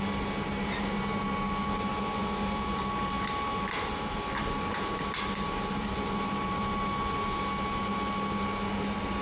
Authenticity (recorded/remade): recorded